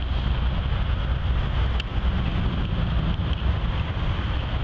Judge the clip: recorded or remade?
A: recorded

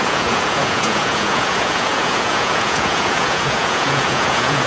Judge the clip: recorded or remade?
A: remade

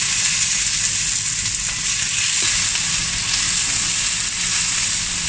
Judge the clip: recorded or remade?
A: recorded